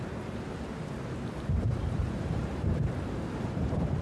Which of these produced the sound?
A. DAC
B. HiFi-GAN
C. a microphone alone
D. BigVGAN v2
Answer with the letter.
D